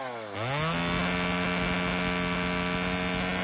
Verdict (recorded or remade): recorded